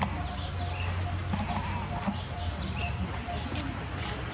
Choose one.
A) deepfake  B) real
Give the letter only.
B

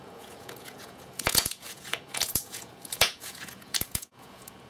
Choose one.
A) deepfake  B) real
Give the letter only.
A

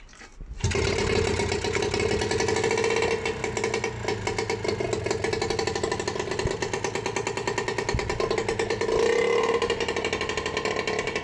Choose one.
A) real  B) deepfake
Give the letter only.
A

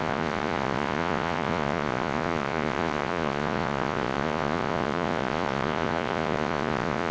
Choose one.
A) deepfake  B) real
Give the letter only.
A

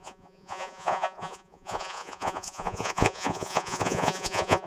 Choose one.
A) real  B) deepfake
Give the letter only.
B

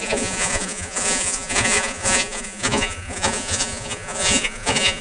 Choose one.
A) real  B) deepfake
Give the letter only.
B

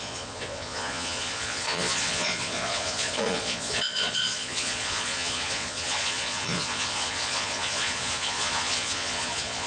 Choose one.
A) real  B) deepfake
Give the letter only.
B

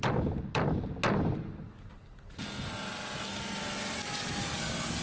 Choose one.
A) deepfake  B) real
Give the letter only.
B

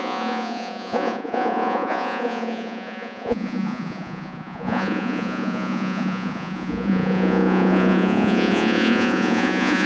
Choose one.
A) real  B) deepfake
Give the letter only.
B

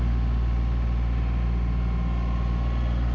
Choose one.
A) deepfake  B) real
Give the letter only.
B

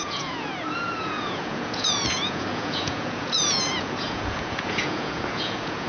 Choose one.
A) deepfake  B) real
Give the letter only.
A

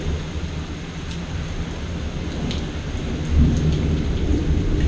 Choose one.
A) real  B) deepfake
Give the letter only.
A